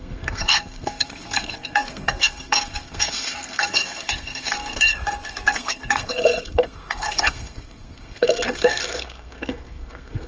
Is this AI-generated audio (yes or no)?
yes